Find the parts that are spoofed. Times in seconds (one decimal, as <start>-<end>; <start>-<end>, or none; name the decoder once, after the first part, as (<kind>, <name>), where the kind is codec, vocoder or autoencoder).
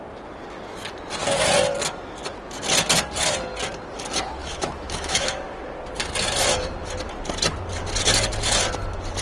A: 4.4-5.6 (autoencoder, DAC-VAE)